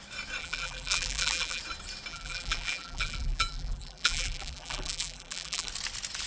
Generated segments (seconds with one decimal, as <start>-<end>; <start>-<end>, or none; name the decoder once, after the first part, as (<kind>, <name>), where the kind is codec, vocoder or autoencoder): 0.4-1.6 (vocoder, BigVGAN v2); 2.1-5.7